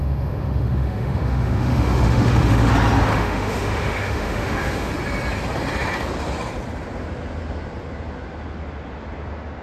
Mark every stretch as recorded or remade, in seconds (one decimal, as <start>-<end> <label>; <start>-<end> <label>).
0.0-2.7 remade; 2.7-3.1 recorded; 3.1-4.9 remade; 4.9-9.6 recorded